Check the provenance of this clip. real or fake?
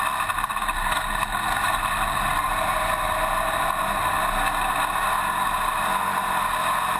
real